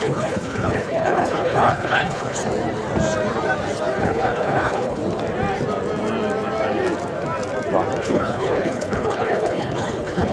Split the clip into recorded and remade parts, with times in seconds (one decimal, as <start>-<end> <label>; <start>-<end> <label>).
0.0-2.4 remade; 2.4-4.0 recorded; 4.0-5.0 remade; 5.0-8.0 recorded; 8.0-10.3 remade